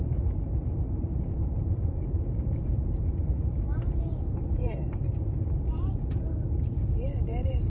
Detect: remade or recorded remade